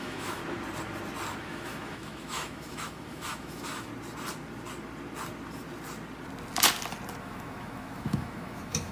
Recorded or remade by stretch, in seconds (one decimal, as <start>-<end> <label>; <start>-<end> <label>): 0.0-0.4 remade; 0.4-1.4 recorded; 1.4-3.9 remade; 3.9-7.2 recorded; 7.2-8.9 remade